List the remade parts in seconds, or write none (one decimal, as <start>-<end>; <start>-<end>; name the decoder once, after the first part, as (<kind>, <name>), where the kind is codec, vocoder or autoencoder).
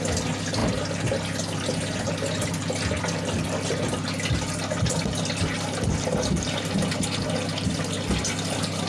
none